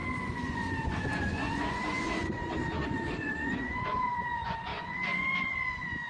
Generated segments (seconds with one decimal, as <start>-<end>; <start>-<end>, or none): 0.0-6.1